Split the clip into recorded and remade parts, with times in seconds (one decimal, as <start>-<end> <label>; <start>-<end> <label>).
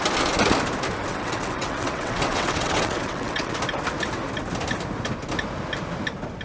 0.0-1.1 recorded; 1.1-3.6 remade; 3.6-6.4 recorded